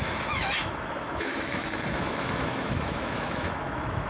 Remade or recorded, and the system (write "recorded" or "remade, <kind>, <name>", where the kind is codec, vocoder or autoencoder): remade, autoencoder, DAC-VAE